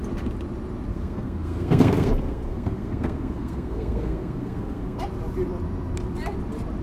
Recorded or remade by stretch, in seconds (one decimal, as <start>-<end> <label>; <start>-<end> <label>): 0.0-0.9 recorded; 0.9-5.0 remade; 5.0-6.8 recorded